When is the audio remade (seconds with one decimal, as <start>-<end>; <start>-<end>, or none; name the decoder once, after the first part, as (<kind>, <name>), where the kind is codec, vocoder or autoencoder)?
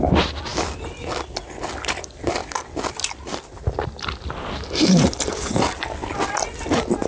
0.0-0.5 (vocoder, BigVGAN v2); 1.7-6.0; 6.5-7.1